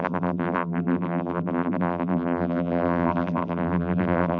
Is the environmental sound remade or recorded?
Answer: remade